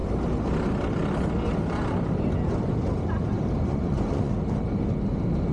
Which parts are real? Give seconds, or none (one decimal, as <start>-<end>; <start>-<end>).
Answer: 0.0-3.7; 4.3-5.5